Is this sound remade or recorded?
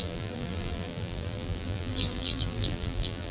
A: remade